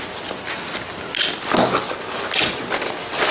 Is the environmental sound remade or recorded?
recorded